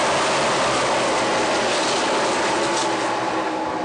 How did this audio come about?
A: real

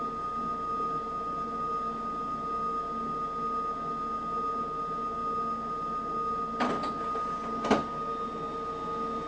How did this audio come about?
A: real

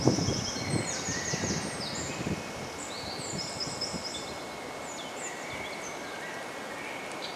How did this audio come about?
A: real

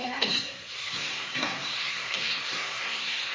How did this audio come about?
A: fake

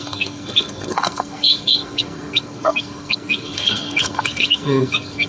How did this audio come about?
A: fake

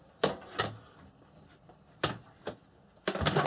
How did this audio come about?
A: real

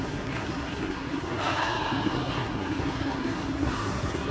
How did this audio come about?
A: fake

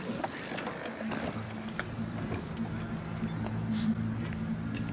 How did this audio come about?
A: real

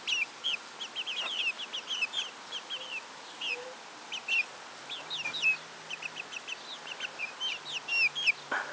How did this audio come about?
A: real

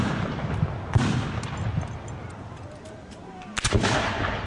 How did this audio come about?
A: real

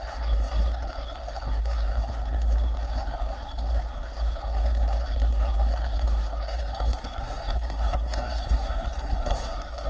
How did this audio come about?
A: fake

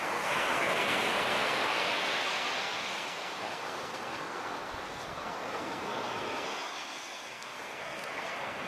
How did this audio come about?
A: fake